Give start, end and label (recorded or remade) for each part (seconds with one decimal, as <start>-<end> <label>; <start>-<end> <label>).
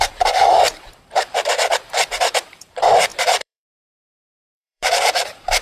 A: 0.0-1.7 remade; 1.7-2.3 recorded; 2.3-5.6 remade